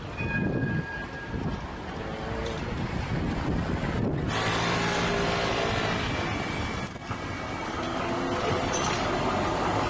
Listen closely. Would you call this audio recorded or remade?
recorded